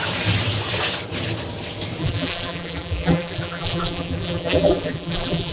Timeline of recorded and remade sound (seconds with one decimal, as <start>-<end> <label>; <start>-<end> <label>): 0.0-2.0 recorded; 2.0-5.5 remade